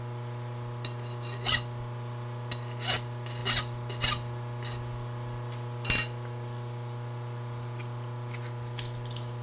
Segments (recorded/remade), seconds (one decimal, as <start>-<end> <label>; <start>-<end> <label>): 0.0-9.4 recorded